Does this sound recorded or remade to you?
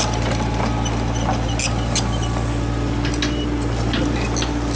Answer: recorded